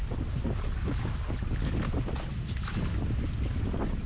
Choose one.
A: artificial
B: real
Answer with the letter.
B